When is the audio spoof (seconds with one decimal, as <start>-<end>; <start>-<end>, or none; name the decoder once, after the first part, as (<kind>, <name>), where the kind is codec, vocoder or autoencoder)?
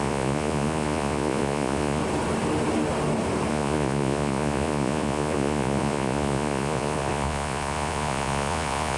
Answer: 0.0-2.0 (vocoder, Vocos); 3.5-9.0